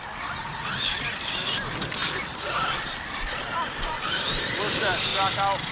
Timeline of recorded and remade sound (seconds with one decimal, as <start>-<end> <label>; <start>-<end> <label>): 0.0-5.1 remade; 5.1-5.7 recorded